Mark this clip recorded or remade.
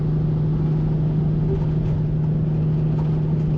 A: recorded